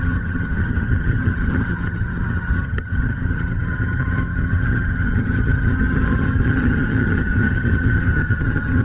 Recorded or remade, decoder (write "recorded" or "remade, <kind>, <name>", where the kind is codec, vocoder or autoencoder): remade, vocoder, HiFi-GAN